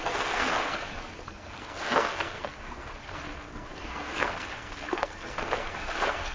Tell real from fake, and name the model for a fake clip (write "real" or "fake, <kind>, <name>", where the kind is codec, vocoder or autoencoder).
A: fake, codec, SNAC